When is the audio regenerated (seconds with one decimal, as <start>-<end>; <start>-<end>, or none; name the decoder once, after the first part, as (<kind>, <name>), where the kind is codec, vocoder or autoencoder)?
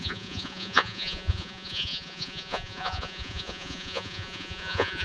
0.0-5.0 (vocoder, Vocos)